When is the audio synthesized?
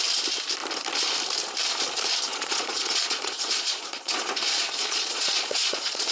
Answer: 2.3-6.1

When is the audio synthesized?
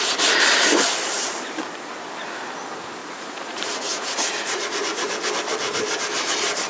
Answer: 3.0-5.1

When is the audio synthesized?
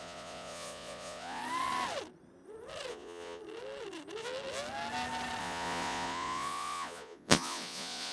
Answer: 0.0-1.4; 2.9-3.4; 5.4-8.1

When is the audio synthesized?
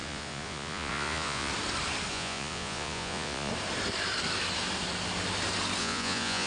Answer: 0.0-1.5; 2.1-3.5; 5.8-6.5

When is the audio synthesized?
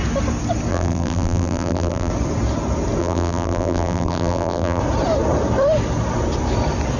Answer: 0.7-2.1; 3.0-4.8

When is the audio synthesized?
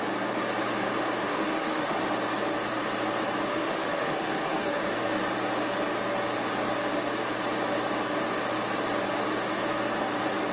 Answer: 1.3-2.0; 3.5-4.9